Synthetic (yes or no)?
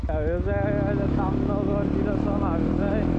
no